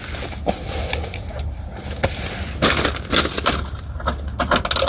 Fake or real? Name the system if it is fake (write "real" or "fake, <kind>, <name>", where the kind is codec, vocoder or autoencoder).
real